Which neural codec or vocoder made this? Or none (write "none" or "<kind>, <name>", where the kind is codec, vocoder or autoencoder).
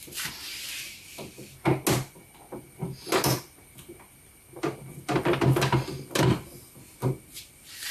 none